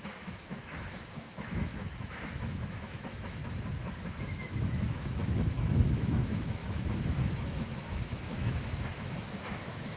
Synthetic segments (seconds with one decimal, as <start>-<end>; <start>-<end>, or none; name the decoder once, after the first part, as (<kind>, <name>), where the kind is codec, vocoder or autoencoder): 0.0-3.4 (autoencoder, DAC-VAE); 4.2-10.0